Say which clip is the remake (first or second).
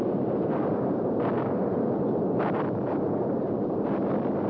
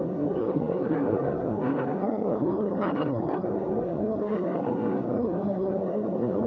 second